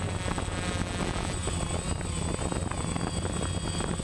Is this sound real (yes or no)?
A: yes